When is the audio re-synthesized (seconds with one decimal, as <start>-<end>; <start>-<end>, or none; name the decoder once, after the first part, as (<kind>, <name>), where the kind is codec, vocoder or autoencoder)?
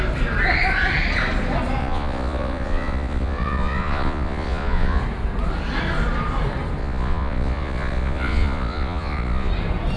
1.8-5.0 (vocoder, Vocos); 6.8-9.5